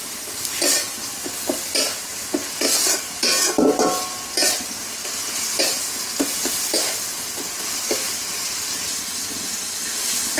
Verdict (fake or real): real